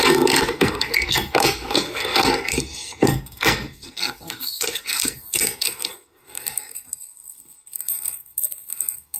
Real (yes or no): no